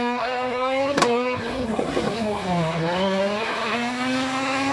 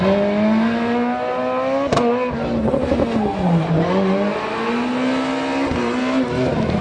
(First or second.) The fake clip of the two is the first